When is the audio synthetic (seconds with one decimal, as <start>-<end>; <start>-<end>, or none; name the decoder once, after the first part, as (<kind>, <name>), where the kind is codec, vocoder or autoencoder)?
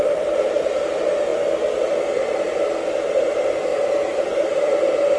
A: 0.0-1.3 (vocoder, BigVGAN v2); 2.9-5.2